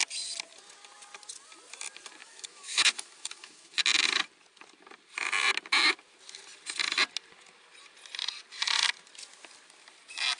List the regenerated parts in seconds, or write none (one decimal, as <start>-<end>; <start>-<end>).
2.2-3.8

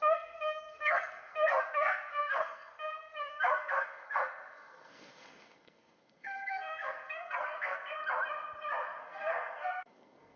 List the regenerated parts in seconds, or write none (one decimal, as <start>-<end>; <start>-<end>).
0.0-8.0; 9.0-10.4

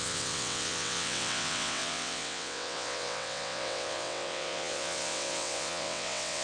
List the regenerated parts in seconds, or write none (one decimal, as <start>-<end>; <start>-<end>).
0.0-6.4